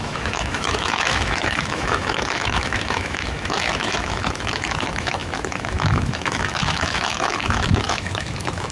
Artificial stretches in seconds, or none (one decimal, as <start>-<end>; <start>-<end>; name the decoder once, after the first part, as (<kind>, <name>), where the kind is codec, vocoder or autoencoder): 0.0-8.7 (autoencoder, DAC-VAE)